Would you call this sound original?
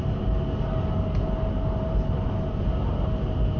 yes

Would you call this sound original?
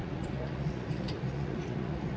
no